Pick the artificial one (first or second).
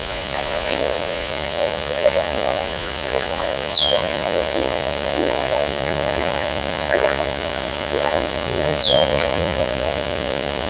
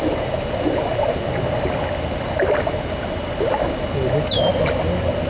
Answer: first